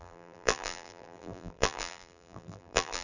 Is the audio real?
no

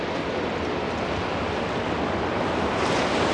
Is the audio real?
yes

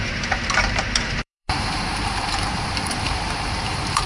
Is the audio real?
no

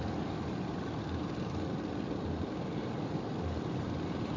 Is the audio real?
yes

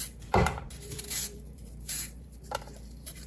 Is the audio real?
no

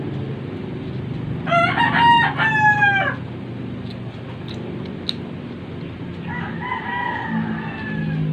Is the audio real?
yes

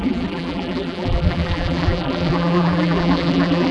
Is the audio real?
no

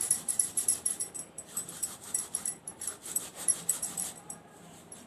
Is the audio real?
no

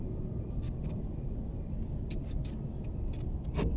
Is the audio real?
yes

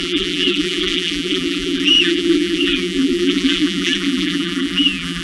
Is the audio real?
no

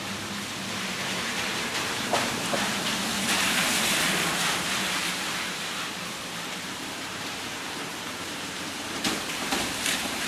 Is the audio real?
no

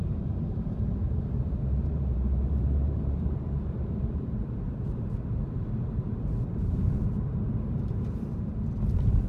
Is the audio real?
no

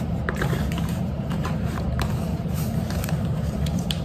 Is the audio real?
no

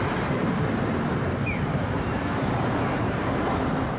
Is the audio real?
no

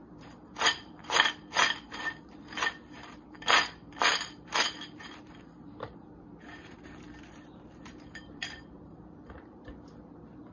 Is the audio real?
no